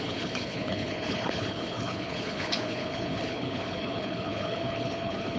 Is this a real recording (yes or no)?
no